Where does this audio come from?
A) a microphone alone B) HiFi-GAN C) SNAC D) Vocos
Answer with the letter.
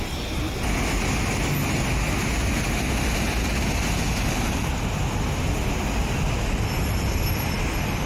A